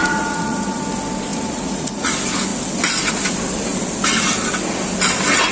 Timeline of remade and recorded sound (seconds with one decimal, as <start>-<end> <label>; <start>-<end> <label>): 0.0-0.8 remade; 0.8-1.3 recorded; 1.3-2.1 remade; 2.1-5.5 recorded